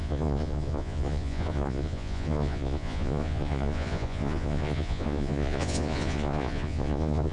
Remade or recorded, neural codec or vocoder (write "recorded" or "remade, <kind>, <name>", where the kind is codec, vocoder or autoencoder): remade, vocoder, Vocos